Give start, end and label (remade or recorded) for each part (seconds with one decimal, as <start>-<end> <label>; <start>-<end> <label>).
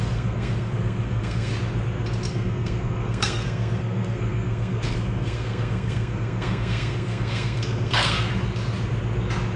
0.0-1.5 remade; 1.5-2.3 recorded; 2.3-8.3 remade; 8.3-9.6 recorded